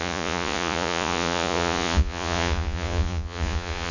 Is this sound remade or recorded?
remade